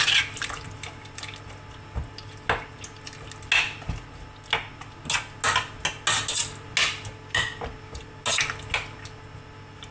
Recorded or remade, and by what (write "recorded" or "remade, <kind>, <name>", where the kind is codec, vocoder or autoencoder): recorded